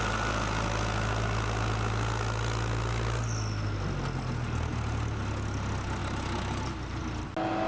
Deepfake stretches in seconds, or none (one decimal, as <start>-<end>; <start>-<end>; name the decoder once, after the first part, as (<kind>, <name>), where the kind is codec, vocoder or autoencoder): none